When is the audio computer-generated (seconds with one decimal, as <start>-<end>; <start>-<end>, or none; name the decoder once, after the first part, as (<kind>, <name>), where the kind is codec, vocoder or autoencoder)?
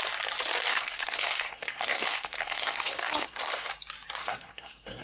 0.7-3.7 (codec, SNAC); 4.2-5.0